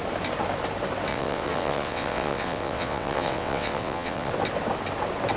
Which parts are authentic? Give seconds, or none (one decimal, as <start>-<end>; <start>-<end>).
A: 0.0-1.1; 4.3-5.4